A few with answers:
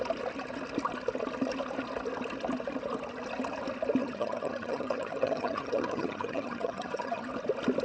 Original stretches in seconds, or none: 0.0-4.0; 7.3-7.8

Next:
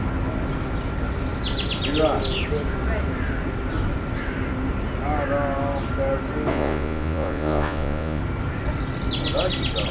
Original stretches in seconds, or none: 0.0-6.5; 8.2-9.9

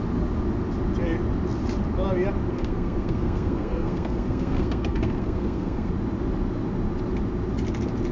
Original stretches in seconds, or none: 0.0-2.5; 5.9-8.1

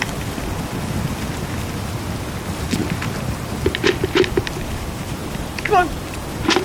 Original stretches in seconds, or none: 0.0-5.2; 6.0-6.6

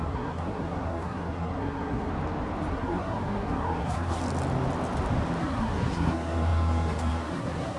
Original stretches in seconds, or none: 2.1-2.7; 4.2-5.4

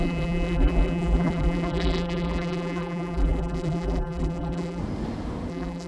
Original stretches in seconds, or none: 4.8-5.5

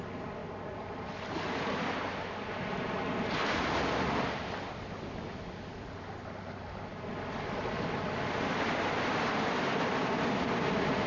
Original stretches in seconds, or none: 0.0-11.1

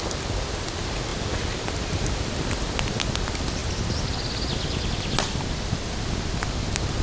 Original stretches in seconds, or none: 0.0-7.0